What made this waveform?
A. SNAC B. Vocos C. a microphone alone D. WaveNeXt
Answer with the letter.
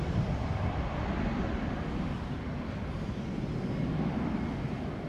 C